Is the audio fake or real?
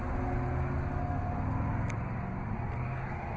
real